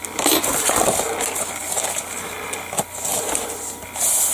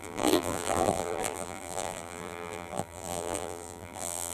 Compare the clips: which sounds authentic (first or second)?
first